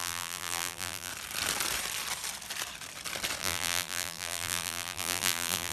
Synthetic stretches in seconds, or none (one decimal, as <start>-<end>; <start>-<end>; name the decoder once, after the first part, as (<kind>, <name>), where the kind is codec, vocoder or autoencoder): 0.0-1.1 (vocoder, BigVGAN v2); 3.4-5.7